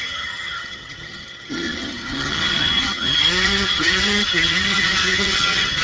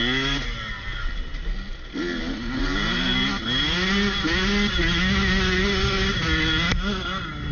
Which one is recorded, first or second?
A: second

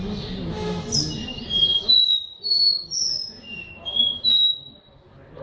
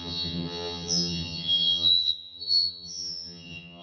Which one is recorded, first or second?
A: first